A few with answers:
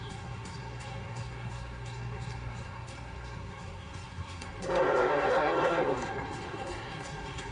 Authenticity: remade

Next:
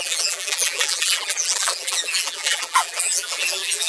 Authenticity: remade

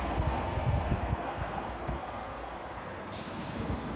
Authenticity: remade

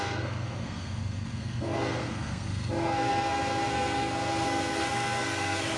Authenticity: remade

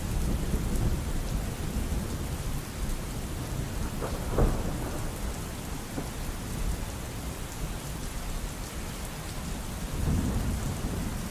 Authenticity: recorded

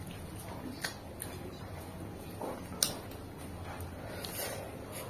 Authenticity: recorded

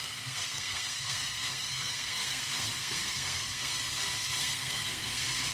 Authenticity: remade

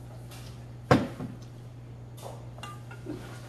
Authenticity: recorded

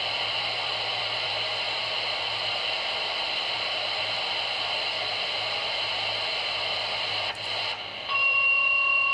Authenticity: remade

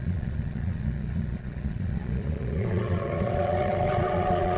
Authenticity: remade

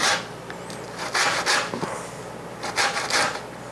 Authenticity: recorded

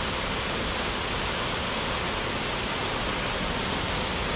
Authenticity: recorded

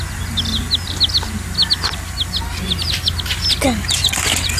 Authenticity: recorded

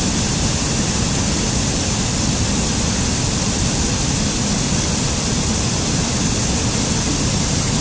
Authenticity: recorded